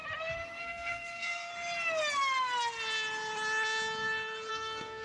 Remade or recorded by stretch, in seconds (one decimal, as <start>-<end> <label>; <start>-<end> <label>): 0.0-0.6 recorded; 0.6-1.5 remade; 1.5-4.5 recorded; 4.5-5.0 remade